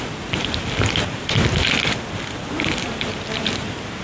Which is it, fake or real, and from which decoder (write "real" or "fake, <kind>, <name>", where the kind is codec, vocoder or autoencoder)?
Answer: real